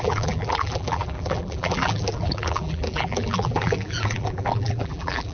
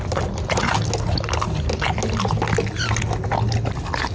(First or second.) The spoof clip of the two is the first